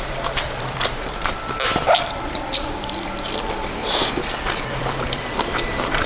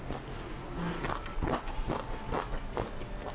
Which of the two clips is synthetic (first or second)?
first